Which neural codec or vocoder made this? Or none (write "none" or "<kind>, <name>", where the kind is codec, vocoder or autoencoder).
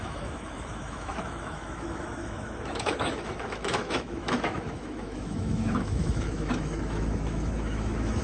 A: autoencoder, DAC-VAE